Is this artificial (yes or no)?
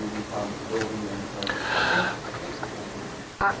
yes